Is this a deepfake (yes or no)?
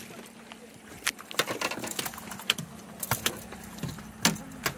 no